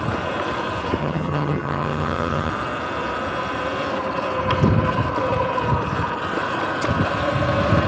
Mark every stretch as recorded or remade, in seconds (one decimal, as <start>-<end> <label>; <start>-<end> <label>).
0.0-1.0 recorded; 1.0-2.5 remade; 2.5-7.9 recorded